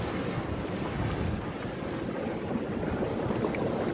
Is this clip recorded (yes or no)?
yes